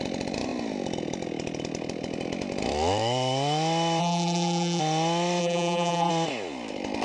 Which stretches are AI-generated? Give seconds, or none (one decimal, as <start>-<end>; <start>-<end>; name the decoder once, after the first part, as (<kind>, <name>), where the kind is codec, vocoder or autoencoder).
4.0-4.8 (vocoder, BigVGAN v2); 5.4-6.1